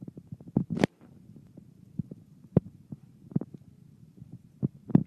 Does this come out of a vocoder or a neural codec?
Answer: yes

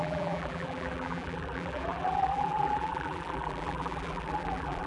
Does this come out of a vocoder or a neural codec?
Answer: yes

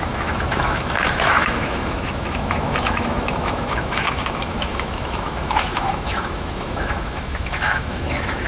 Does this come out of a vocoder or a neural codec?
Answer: yes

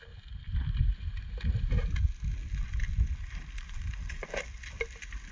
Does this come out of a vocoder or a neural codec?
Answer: no